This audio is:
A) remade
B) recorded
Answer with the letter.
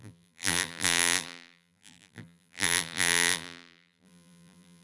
A